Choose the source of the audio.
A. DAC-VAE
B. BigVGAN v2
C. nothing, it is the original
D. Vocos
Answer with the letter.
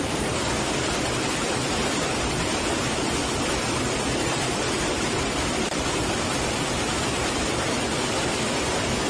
B